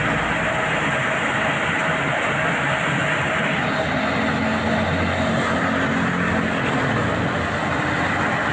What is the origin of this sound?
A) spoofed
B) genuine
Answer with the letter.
B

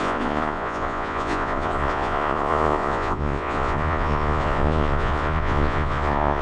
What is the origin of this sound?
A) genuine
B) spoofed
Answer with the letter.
B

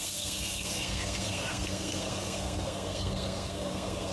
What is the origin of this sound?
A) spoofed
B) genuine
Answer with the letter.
A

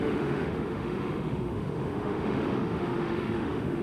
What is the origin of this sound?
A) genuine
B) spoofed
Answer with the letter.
B